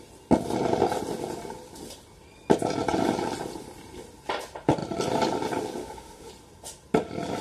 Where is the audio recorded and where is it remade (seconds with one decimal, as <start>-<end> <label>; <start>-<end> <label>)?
0.0-5.8 recorded; 5.8-6.3 remade; 6.3-7.4 recorded